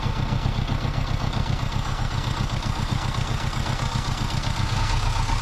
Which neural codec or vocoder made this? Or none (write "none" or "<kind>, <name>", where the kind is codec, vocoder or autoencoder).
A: codec, SNAC